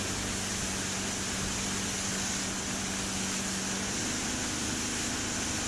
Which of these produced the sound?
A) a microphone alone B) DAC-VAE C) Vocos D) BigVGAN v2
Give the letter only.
A